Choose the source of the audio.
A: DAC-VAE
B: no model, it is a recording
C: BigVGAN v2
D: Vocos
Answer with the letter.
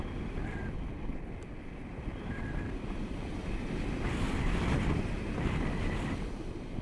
B